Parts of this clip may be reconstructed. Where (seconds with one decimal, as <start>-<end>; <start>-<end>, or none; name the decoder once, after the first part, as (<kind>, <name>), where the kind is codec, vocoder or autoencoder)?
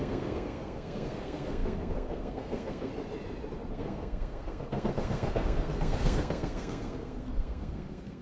0.0-2.9 (codec, SNAC); 3.7-8.2